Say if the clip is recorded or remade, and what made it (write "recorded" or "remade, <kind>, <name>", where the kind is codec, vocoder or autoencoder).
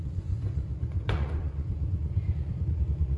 remade, vocoder, Vocos